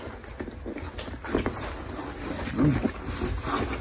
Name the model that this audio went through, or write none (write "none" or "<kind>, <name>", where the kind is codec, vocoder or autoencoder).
none